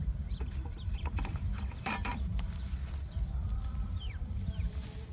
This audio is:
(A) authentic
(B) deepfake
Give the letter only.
B